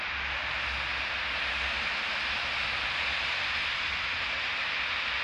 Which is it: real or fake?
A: real